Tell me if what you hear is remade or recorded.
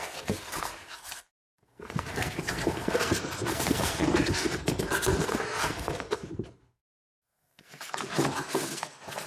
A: remade